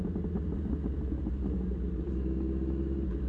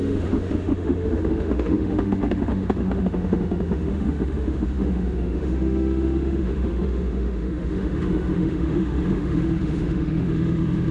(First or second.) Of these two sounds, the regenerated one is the second